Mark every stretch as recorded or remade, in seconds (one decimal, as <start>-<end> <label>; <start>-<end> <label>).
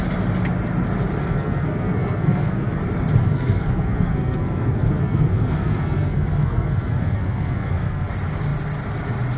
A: 0.0-1.2 recorded; 1.2-2.8 remade; 2.8-3.2 recorded; 3.2-8.1 remade; 8.1-9.4 recorded